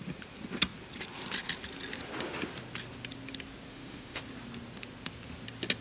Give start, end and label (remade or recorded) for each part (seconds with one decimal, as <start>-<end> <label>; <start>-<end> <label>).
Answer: 0.0-3.7 recorded; 3.7-4.2 remade; 4.2-5.8 recorded